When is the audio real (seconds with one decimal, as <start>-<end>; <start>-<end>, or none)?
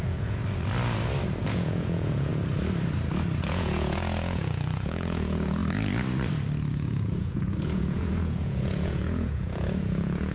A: 0.4-1.4; 2.3-3.4; 5.6-6.7